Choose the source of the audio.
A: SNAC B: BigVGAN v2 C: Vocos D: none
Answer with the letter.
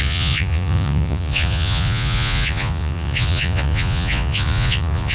C